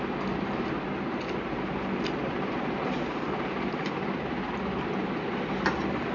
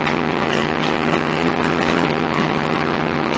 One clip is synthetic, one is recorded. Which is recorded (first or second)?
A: first